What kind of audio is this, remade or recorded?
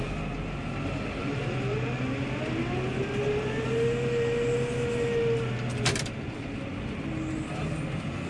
recorded